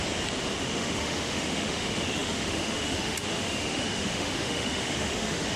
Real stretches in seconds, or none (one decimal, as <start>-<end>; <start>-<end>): 0.0-0.6